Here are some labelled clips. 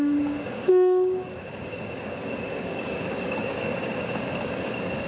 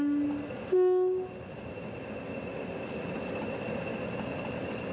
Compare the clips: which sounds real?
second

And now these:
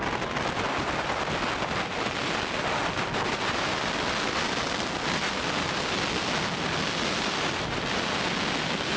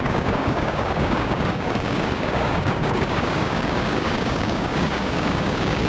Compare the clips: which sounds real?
first